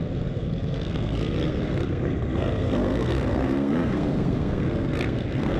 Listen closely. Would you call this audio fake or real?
fake